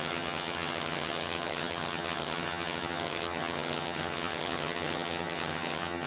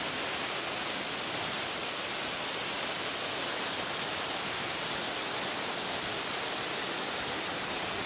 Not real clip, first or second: first